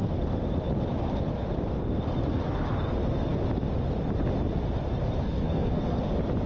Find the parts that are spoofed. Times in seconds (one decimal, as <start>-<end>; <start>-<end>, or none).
5.2-6.0

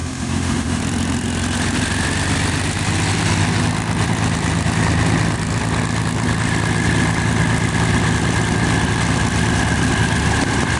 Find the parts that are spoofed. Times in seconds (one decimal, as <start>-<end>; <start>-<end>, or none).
0.0-0.8

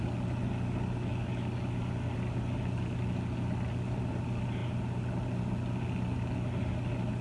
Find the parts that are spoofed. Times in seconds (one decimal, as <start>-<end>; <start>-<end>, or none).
none

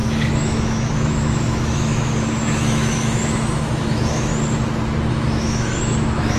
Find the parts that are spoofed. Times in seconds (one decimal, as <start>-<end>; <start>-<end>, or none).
0.0-4.3; 5.1-6.4